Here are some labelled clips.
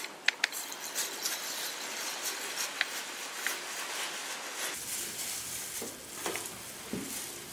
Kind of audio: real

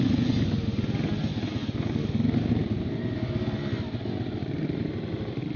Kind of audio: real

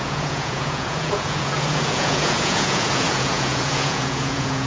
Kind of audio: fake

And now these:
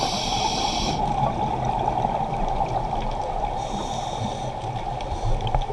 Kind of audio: real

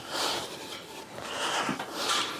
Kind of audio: real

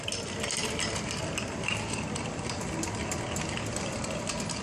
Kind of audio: real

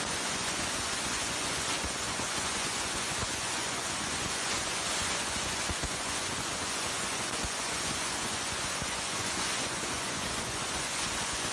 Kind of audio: fake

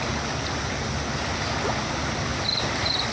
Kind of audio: real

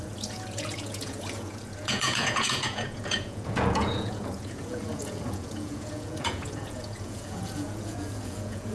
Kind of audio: fake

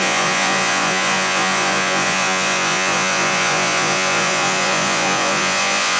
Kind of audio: fake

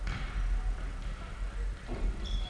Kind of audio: real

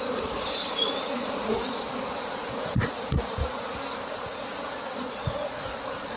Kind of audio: fake